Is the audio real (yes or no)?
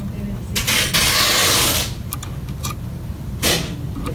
yes